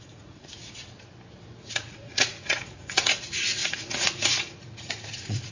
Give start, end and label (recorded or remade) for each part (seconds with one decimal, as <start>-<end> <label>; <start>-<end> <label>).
0.0-0.6 remade; 0.6-1.6 recorded; 1.6-5.5 remade